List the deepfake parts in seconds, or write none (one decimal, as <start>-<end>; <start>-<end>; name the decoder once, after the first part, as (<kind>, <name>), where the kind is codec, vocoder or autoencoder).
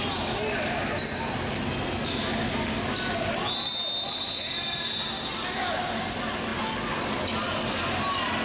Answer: none